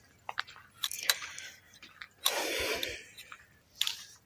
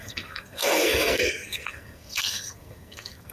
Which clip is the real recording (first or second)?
first